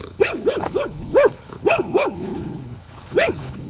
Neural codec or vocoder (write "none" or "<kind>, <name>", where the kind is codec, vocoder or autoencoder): codec, HILCodec